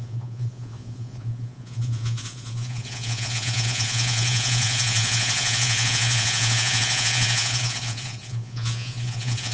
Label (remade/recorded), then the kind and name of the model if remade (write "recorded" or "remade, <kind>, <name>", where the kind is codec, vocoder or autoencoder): remade, vocoder, Vocos